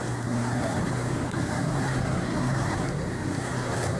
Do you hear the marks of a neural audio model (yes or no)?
yes